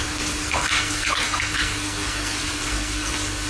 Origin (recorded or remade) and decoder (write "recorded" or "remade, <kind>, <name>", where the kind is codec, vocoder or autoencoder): remade, codec, SNAC